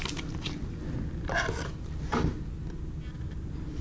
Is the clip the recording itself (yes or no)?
yes